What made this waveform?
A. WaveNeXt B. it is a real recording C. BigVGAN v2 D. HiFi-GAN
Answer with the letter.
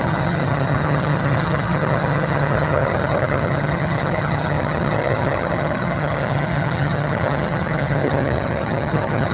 D